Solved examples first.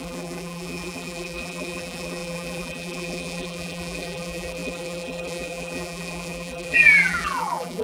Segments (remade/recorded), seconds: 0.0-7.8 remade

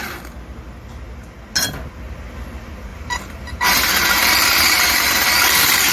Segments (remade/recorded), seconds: 0.0-2.9 recorded; 2.9-5.9 remade

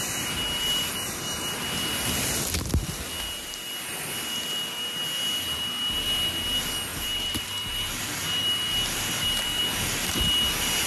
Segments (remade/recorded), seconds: 0.0-6.9 recorded; 6.9-9.6 remade; 9.6-10.9 recorded

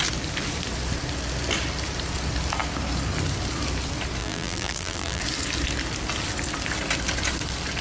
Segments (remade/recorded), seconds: 0.0-4.2 recorded; 4.2-5.2 remade; 5.2-7.8 recorded